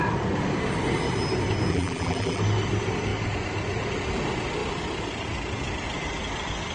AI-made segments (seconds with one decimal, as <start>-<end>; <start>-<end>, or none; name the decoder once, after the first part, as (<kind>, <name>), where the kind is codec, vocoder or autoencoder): 1.7-2.4 (vocoder, BigVGAN v2)